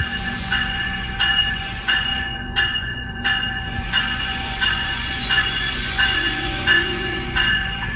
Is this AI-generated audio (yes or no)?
yes